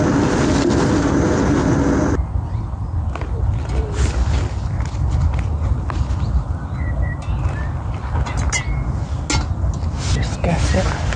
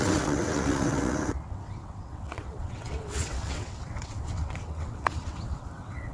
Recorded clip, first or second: first